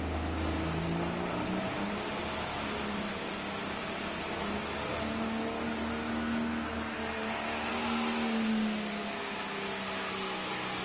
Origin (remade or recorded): recorded